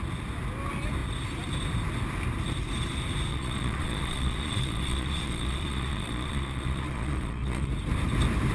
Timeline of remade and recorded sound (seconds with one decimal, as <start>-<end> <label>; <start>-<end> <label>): 0.0-3.3 recorded; 3.3-7.7 remade; 7.7-8.5 recorded